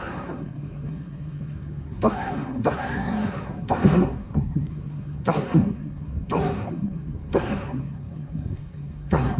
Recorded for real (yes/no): no